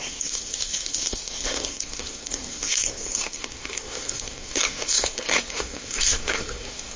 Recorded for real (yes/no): no